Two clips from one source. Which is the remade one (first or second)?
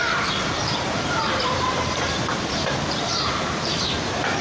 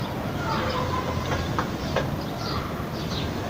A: first